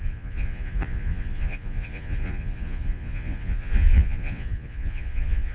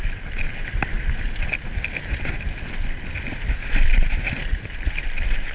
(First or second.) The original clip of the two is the second